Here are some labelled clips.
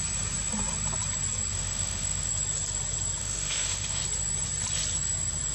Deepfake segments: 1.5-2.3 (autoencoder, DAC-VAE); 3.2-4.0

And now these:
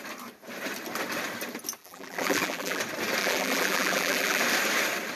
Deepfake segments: 1.8-2.8 (vocoder, BigVGAN v2); 3.2-4.4

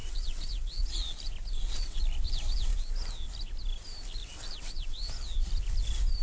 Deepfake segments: 0.0-0.9 (vocoder, WaveNeXt); 1.4-2.0; 4.2-5.1